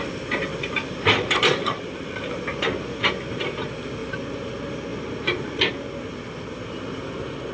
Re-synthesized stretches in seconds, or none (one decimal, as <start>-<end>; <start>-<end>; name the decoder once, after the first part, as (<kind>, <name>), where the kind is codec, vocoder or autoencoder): 0.5-2.7 (vocoder, BigVGAN v2); 4.0-4.5; 4.9-5.6